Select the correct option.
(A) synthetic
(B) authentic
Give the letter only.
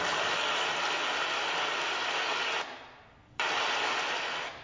B